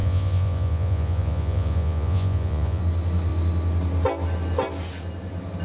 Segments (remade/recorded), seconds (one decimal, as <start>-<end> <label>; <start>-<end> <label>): 0.0-2.8 remade; 2.8-5.6 recorded